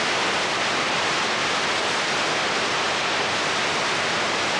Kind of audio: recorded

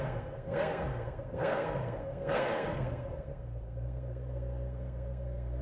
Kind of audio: remade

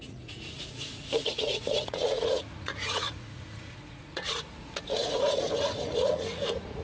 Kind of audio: remade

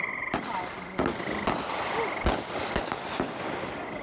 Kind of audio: recorded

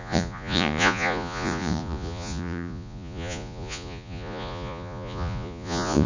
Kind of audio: remade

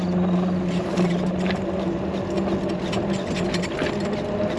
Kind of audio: recorded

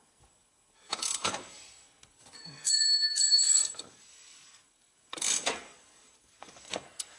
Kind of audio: remade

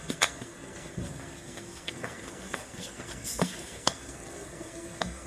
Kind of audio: remade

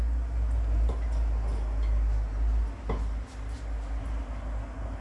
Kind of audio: recorded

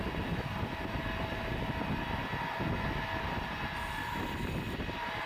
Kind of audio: recorded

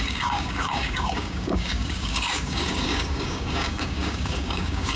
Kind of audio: remade